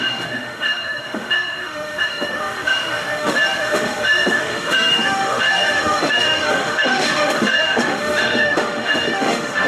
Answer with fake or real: fake